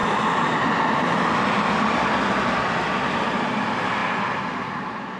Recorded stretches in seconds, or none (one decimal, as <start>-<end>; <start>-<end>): 0.0-5.2